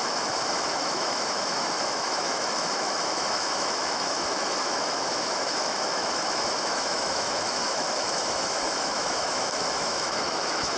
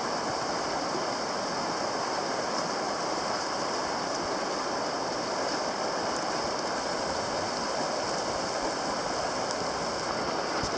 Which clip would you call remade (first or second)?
first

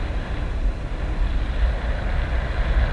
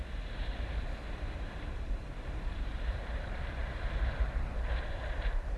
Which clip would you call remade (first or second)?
second